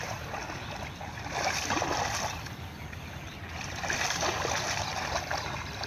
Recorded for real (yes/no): yes